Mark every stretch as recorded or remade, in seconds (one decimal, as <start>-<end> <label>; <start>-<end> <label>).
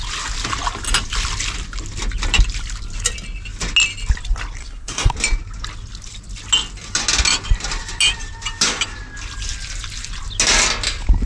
0.0-4.6 recorded; 4.6-5.1 remade; 5.1-11.3 recorded